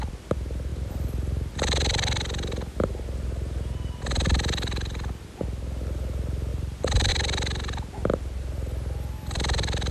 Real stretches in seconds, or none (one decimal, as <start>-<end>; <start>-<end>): 0.0-0.7; 1.5-6.5; 7.1-9.9